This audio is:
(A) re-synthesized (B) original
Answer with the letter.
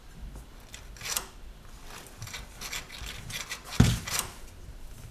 B